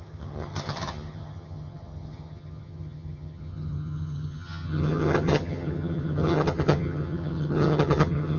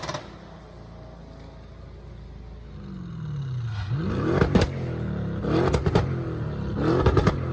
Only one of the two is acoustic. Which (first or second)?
second